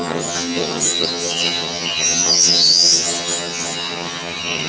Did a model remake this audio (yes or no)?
yes